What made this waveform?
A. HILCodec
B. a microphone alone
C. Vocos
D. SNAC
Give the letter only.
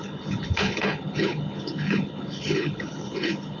A